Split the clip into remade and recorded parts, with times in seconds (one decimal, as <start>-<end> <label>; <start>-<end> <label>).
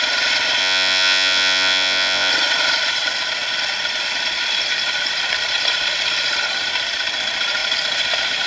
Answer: 0.0-0.6 recorded; 0.6-2.3 remade; 2.3-8.5 recorded